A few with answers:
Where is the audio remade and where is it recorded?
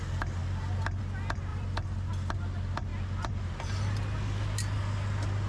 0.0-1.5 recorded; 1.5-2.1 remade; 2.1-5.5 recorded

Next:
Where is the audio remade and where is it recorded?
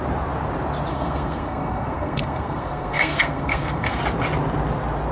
0.0-0.9 recorded; 0.9-4.0 remade; 4.0-5.1 recorded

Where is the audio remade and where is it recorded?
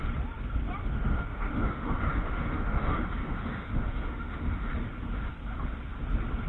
0.0-0.8 recorded; 0.8-4.7 remade; 4.7-6.5 recorded